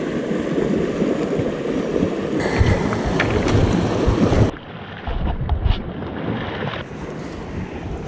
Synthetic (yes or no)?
no